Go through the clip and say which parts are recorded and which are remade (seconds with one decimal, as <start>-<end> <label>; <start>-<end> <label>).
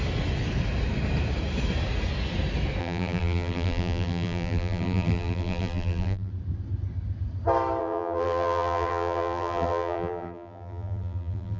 0.0-2.8 recorded; 2.8-6.3 remade; 6.3-7.8 recorded; 7.8-11.6 remade